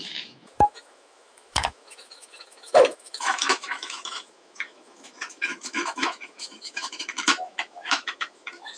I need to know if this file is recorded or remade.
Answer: remade